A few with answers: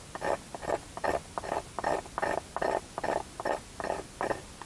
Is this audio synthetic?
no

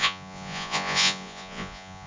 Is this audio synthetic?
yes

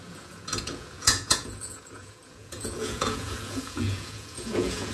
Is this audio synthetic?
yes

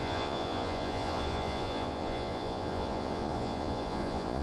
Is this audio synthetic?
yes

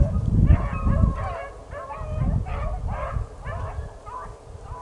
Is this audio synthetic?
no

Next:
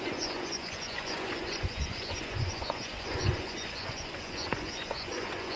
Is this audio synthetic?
yes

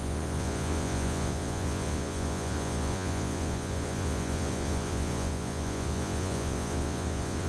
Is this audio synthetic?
yes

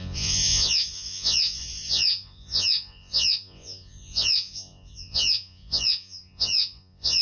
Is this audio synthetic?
yes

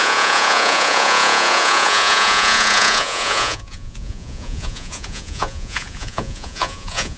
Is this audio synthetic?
yes